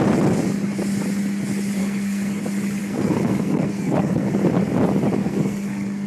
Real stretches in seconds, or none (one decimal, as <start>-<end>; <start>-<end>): 0.0-1.8; 2.4-2.8; 4.3-5.2